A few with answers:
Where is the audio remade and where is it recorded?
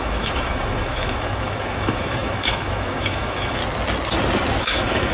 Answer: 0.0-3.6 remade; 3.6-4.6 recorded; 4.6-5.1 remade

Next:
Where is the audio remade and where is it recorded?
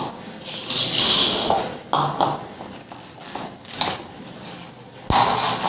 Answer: 0.0-1.0 recorded; 1.0-1.6 remade; 1.6-5.7 recorded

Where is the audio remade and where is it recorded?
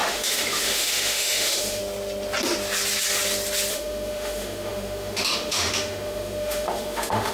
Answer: 0.0-1.8 remade; 1.8-3.7 recorded; 3.7-7.3 remade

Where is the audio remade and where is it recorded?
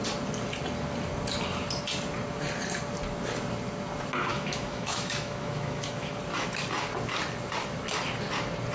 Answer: 0.0-4.3 recorded; 4.3-6.2 remade; 6.2-8.7 recorded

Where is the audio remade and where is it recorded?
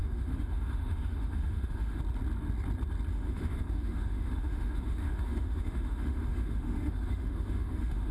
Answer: 0.0-2.0 remade; 2.0-3.1 recorded; 3.1-8.1 remade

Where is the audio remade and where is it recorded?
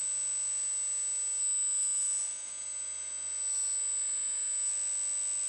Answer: 0.0-1.4 recorded; 1.4-4.7 remade; 4.7-5.5 recorded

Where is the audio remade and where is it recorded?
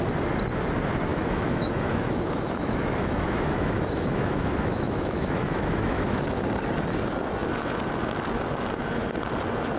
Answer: 0.0-1.1 recorded; 1.1-6.2 remade; 6.2-9.8 recorded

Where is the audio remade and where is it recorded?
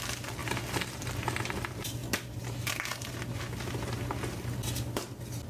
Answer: 0.0-5.5 recorded